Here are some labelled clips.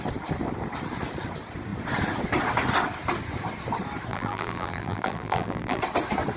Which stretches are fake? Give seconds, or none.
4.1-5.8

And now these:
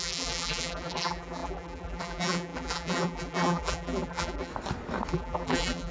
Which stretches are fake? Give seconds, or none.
0.0-4.5; 5.1-5.9

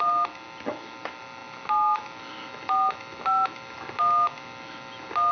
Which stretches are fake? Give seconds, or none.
none

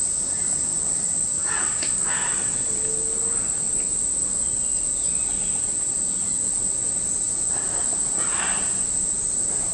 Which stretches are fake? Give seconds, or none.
none

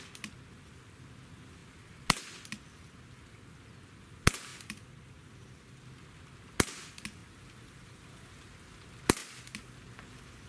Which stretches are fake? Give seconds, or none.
4.5-5.8; 7.2-8.3